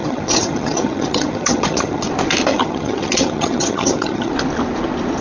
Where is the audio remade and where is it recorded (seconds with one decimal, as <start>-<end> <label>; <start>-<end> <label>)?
0.0-2.1 remade; 2.1-2.5 recorded; 2.5-4.3 remade; 4.3-5.2 recorded